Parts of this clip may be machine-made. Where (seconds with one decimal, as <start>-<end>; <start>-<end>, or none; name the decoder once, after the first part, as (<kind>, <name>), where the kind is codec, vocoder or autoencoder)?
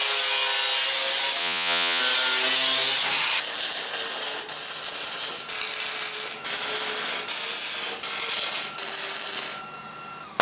1.4-2.0 (vocoder, Vocos)